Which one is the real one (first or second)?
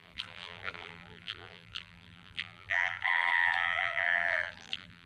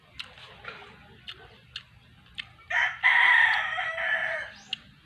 second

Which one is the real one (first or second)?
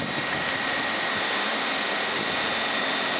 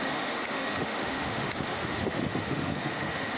first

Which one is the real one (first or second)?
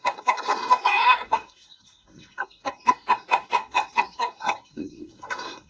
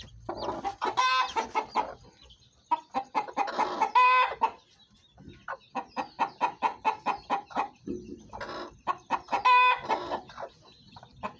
second